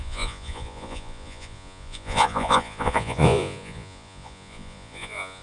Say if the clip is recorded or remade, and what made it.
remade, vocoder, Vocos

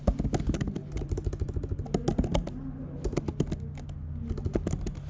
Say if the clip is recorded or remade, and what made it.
recorded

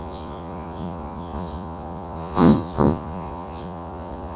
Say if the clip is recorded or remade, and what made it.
remade, vocoder, Vocos